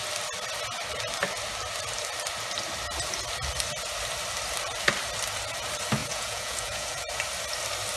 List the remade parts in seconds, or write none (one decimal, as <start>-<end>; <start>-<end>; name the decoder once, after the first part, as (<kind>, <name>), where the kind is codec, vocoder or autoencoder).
6.0-7.1 (vocoder, Vocos)